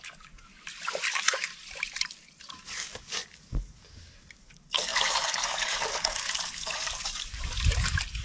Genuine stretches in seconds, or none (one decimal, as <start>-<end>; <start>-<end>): 0.5-1.1; 1.5-2.5